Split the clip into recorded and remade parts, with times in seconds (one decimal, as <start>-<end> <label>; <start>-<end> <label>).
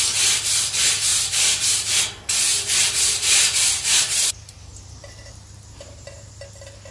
0.0-1.1 recorded; 1.1-2.0 remade; 2.0-2.5 recorded; 2.5-6.3 remade; 6.3-6.9 recorded